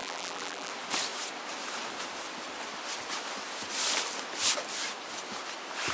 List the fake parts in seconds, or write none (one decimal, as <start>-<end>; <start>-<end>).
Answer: 0.0-0.7